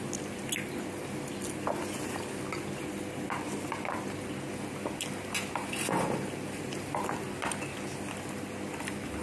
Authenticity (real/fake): real